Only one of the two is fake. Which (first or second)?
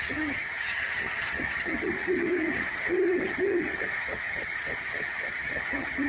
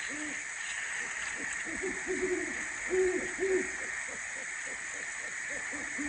first